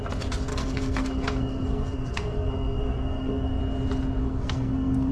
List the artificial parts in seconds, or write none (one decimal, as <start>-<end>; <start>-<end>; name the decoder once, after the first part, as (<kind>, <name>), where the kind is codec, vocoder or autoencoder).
0.5-3.6 (codec, SNAC); 4.2-5.1

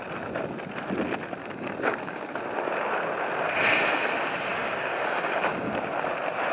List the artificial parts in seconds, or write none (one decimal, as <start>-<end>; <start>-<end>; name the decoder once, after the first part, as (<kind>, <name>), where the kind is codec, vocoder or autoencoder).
1.4-2.3 (codec, DAC); 4.5-5.7

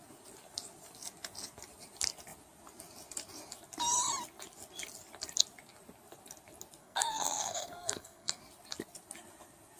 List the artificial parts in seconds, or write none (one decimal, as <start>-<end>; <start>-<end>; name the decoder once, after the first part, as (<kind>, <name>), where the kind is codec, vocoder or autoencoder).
6.8-8.4 (codec, SNAC)

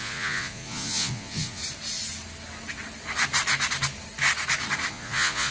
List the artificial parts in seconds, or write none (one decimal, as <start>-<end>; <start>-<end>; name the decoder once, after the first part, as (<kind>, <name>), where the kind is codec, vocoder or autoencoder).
0.0-1.6 (vocoder, Vocos); 4.9-5.5

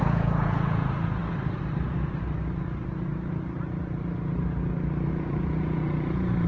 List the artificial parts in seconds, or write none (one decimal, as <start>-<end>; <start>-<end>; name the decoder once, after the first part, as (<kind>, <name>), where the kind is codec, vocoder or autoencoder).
0.0-1.2 (vocoder, Vocos); 5.1-6.5

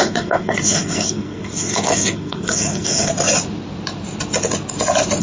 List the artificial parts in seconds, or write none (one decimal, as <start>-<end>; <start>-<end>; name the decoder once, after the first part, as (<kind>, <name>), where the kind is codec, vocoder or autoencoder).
0.0-3.1 (codec, SNAC)